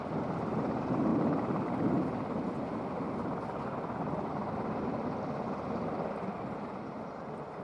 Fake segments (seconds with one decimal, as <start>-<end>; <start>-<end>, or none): none